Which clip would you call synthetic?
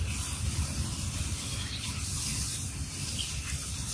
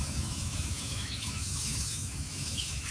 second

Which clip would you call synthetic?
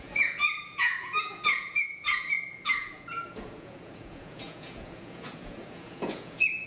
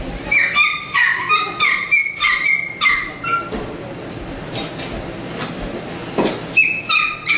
first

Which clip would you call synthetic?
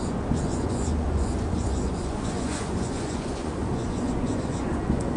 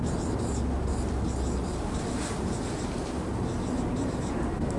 first